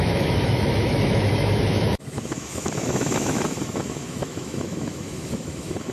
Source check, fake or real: fake